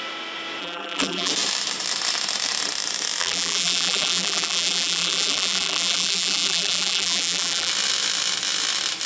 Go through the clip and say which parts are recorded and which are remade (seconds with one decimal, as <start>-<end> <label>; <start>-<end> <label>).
0.0-0.6 recorded; 0.6-1.3 remade; 1.3-3.2 recorded; 3.2-7.7 remade; 7.7-9.1 recorded